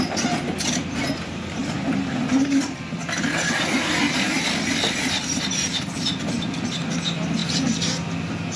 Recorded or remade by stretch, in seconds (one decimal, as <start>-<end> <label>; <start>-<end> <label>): 0.0-8.6 recorded